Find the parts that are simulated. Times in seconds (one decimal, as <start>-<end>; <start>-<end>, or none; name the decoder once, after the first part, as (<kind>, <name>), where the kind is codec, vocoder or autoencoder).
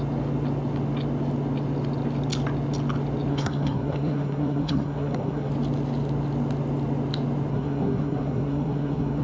3.3-5.5 (codec, SNAC); 7.5-9.2